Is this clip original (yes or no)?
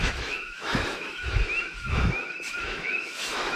no